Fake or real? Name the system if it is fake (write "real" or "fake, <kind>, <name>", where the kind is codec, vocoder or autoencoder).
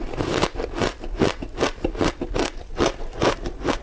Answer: real